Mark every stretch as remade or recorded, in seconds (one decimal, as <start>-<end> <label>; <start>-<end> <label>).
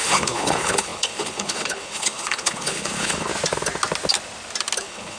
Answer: 0.0-3.3 remade; 3.3-4.8 recorded; 4.8-5.2 remade